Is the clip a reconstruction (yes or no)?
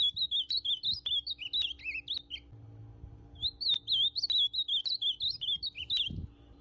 no